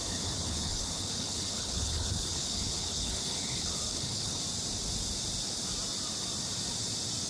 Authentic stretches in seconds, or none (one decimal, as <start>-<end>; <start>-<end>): 4.4-7.3